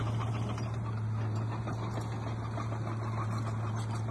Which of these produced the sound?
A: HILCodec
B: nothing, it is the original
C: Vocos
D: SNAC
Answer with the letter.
B